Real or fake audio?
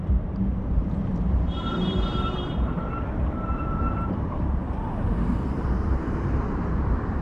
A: fake